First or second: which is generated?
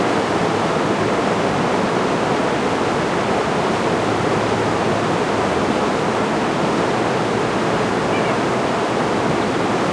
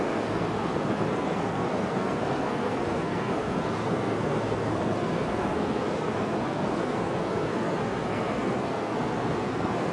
second